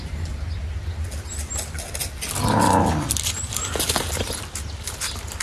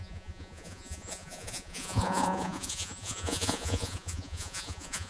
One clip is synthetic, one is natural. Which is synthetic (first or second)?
second